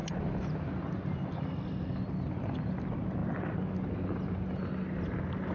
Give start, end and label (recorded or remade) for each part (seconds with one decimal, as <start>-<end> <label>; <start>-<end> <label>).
0.0-5.5 recorded